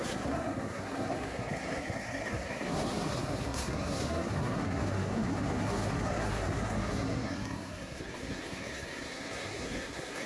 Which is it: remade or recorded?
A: remade